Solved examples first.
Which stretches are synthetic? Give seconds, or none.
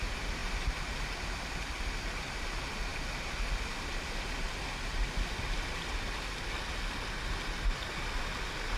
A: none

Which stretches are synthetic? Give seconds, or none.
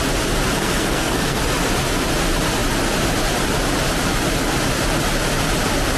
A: 0.6-1.4 (codec, SNAC)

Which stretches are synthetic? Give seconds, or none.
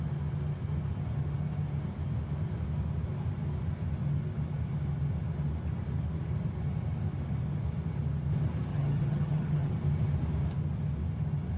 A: 8.7-9.7 (vocoder, HiFi-GAN)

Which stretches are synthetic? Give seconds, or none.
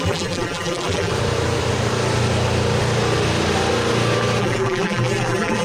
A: 0.0-1.1 (vocoder, BigVGAN v2); 4.4-5.6